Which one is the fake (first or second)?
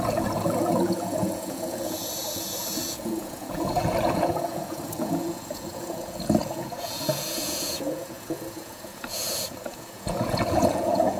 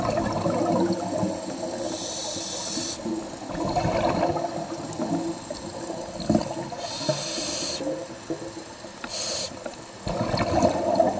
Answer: first